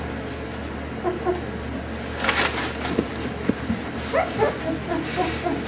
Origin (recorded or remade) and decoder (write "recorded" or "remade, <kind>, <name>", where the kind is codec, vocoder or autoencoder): recorded